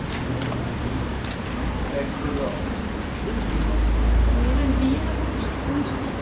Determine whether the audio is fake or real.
real